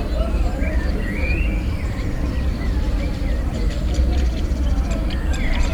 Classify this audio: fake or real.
fake